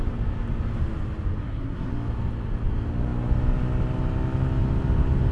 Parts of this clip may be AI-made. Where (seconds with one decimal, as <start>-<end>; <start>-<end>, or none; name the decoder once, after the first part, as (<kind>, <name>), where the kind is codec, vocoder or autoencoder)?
1.4-1.9 (codec, SNAC)